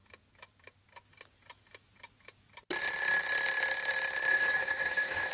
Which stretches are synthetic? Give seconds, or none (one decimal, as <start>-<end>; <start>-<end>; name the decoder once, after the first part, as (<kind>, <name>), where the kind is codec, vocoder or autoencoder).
4.3-5.3 (codec, DAC)